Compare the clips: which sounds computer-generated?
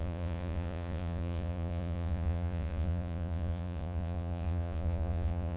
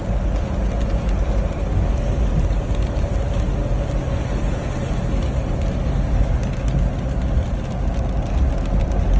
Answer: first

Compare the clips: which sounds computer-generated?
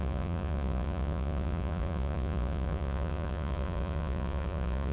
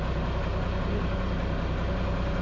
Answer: first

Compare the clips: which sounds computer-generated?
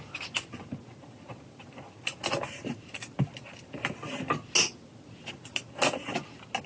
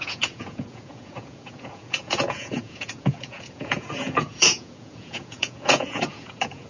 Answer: second